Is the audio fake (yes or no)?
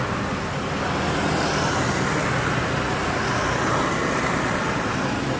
no